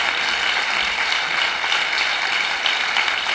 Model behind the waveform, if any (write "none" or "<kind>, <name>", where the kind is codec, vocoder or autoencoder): none